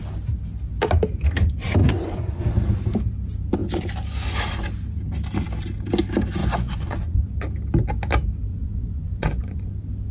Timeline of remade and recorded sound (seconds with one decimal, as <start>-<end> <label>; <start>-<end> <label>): 0.0-1.8 recorded; 1.8-2.4 remade; 2.4-6.4 recorded; 6.4-7.2 remade; 7.2-8.5 recorded; 8.5-9.7 remade; 9.7-10.1 recorded